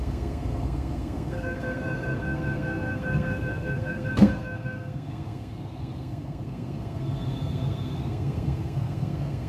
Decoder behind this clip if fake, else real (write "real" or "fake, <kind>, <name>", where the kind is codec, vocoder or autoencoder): fake, codec, SNAC